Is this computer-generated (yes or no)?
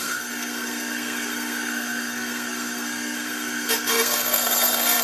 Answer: yes